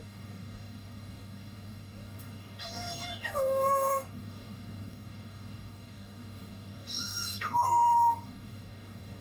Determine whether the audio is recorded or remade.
remade